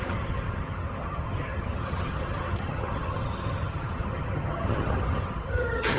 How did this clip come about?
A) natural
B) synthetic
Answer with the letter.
B